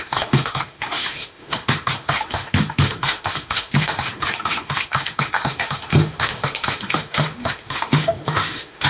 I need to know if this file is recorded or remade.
remade